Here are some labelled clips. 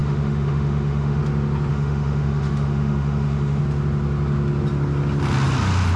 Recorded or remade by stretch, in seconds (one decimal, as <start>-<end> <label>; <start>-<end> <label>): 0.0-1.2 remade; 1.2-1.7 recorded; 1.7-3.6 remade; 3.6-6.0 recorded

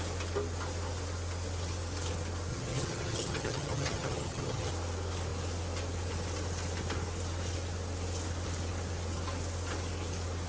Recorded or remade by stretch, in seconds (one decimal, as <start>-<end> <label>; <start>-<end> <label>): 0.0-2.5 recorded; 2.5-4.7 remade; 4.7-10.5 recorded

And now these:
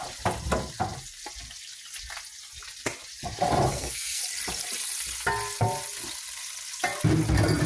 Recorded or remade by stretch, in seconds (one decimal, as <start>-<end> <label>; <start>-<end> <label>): 0.0-3.7 recorded; 3.7-4.2 remade; 4.2-7.7 recorded

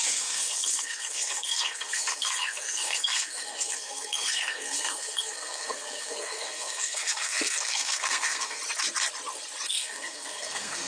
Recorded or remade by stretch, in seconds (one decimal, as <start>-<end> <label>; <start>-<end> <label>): 0.0-8.6 remade; 8.6-9.7 recorded; 9.7-10.9 remade